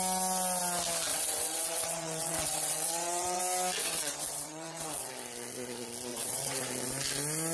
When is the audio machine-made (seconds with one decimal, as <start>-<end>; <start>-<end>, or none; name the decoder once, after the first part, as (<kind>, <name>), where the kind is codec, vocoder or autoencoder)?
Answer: 1.1-3.4 (vocoder, WaveNeXt); 3.8-5.1; 6.1-6.6